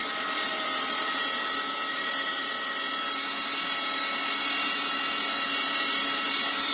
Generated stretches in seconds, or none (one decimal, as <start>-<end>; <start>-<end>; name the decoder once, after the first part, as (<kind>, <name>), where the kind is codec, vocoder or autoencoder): none